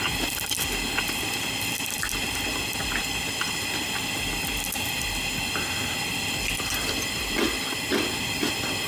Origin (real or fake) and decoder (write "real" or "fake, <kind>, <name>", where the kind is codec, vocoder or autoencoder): real